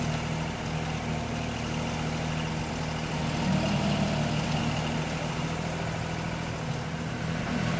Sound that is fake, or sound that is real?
real